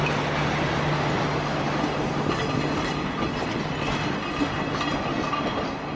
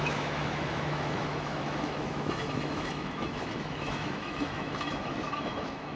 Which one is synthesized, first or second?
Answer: second